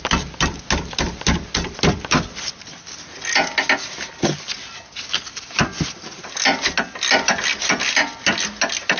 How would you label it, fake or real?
real